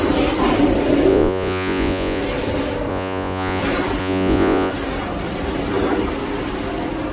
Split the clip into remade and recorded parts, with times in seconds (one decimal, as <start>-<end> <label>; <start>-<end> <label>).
0.0-1.1 recorded; 1.1-2.2 remade; 2.2-2.9 recorded; 2.9-3.6 remade; 3.6-4.0 recorded; 4.0-4.7 remade; 4.7-7.1 recorded